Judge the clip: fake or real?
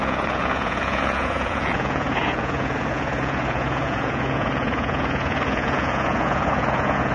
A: fake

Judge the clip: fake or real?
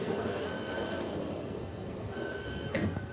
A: fake